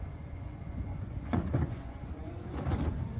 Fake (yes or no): yes